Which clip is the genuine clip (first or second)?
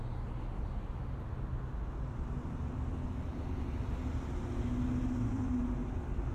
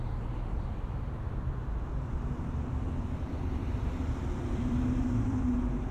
first